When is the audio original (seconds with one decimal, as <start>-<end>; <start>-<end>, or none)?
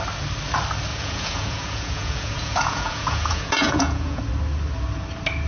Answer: 0.0-0.9; 4.2-5.5